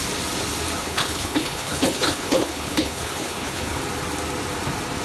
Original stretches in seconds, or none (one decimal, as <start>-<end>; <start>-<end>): 0.0-0.8; 3.8-5.0